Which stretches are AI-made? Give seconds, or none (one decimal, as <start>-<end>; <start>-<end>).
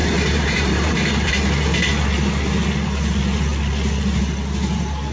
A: 0.0-1.3